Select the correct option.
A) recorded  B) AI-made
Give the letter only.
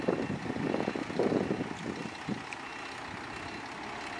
A